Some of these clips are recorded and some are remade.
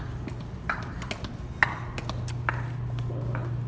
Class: recorded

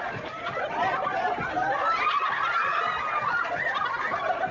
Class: recorded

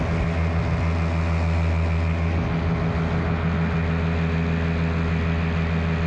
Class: recorded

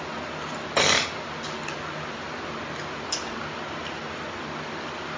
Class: recorded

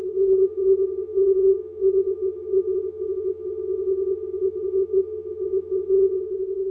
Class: remade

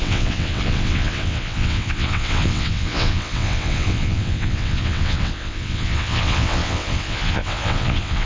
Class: remade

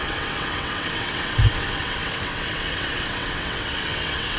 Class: remade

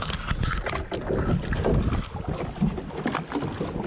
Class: recorded